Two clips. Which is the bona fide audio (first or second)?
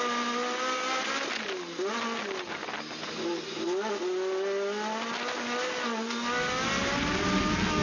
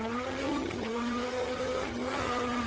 first